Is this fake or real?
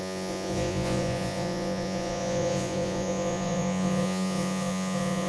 fake